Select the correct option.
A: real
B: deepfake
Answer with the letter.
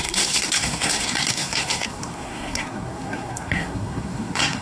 B